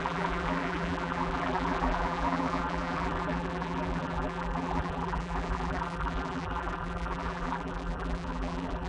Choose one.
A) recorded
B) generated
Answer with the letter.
B